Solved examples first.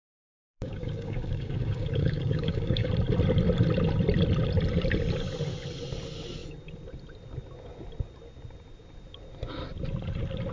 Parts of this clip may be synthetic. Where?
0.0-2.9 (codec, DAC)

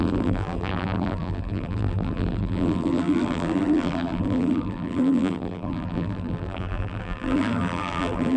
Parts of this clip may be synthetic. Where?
0.0-8.4 (vocoder, BigVGAN v2)

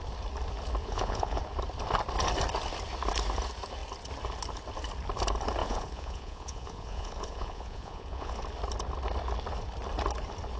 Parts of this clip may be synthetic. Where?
0.8-1.4 (vocoder, Vocos); 5.6-8.4

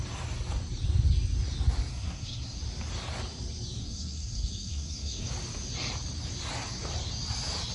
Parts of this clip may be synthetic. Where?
1.9-2.6 (codec, SNAC); 3.8-5.3